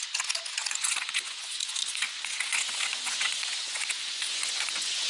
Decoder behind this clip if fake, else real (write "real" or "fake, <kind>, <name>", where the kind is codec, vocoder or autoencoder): fake, vocoder, Vocos